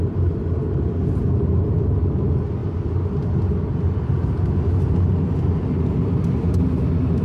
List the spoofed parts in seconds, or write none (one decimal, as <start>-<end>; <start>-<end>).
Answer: none